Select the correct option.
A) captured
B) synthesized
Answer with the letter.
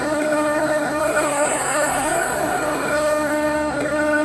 B